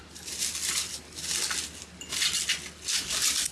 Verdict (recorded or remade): recorded